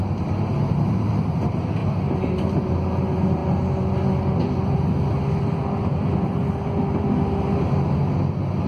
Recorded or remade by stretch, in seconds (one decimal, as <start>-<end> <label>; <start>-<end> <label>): 0.0-8.7 recorded